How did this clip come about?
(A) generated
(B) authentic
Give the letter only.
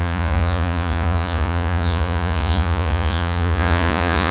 A